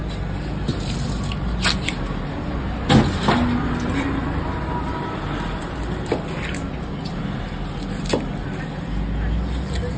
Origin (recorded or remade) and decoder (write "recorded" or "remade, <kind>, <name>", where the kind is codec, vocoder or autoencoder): recorded